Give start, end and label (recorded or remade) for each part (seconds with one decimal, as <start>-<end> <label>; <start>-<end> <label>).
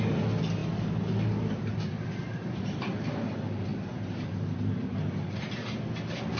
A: 0.0-6.4 recorded